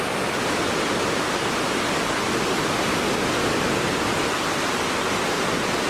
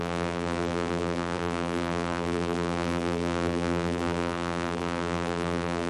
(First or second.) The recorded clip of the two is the first